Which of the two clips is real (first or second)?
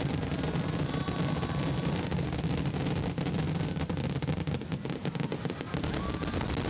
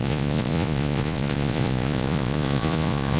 first